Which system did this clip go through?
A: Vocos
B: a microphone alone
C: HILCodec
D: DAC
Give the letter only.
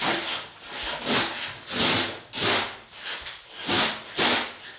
B